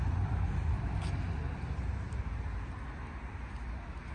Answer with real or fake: real